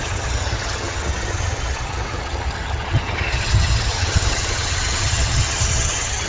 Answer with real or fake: fake